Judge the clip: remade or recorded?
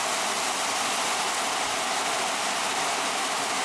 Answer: recorded